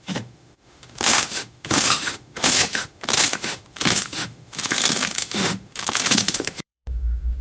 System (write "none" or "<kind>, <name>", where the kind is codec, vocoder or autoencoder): autoencoder, DAC-VAE